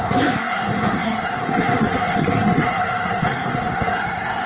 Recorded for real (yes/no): no